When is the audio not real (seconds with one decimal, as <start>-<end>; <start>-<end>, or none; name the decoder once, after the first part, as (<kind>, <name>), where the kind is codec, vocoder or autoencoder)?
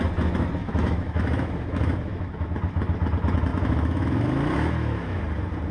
0.6-2.5 (autoencoder, DAC-VAE); 3.5-5.2